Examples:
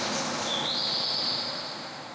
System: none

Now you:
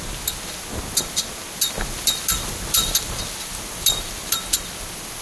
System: none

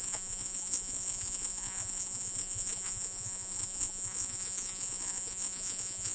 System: vocoder, Vocos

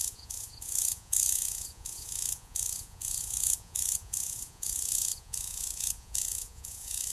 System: vocoder, Vocos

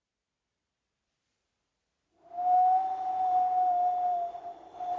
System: none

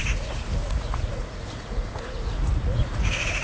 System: vocoder, Vocos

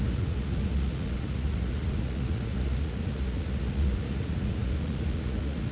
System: vocoder, Vocos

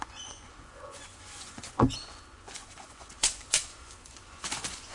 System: vocoder, Vocos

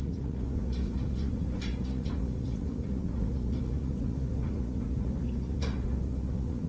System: vocoder, Vocos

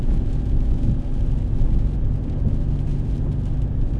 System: none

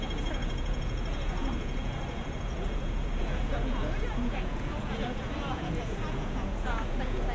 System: vocoder, Vocos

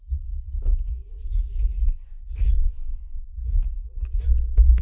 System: none